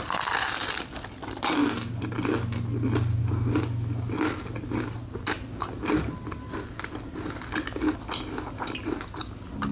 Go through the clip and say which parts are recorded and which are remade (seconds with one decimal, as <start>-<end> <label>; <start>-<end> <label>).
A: 0.0-9.7 recorded